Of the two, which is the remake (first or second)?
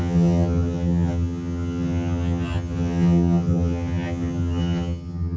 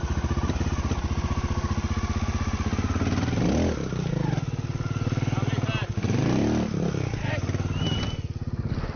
first